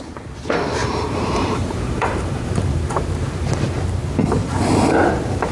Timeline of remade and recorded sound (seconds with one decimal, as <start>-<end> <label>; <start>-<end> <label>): 0.0-0.8 recorded; 0.8-3.8 remade; 3.8-4.4 recorded; 4.4-5.5 remade